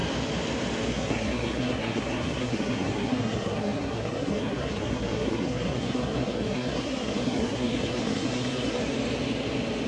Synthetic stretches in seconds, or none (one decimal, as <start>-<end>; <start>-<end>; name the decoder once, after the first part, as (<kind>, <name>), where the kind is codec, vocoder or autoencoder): 0.9-8.8 (codec, SNAC)